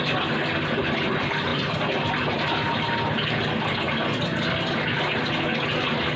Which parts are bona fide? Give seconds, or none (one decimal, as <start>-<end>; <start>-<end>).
0.0-6.2